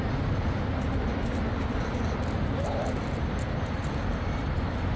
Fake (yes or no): no